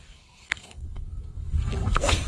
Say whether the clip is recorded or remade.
remade